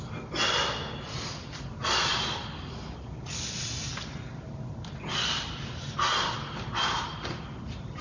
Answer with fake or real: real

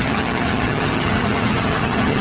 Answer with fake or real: fake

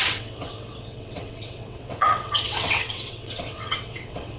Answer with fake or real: fake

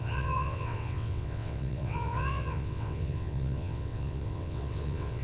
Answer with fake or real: fake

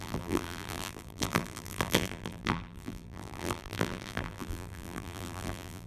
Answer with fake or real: fake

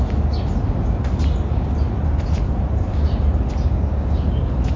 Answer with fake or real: real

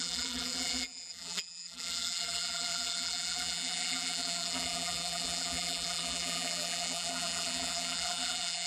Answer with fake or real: fake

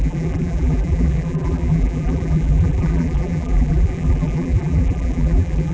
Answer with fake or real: fake